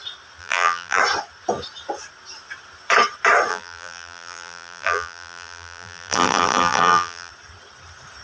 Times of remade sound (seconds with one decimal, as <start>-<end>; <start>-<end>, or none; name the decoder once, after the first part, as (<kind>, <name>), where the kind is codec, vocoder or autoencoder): 0.4-1.0 (vocoder, BigVGAN v2); 3.5-7.3